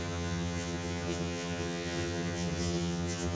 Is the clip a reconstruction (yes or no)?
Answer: yes